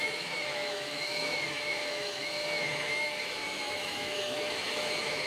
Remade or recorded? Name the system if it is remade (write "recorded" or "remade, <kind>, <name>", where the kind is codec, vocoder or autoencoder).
remade, autoencoder, DAC-VAE